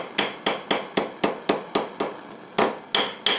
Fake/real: real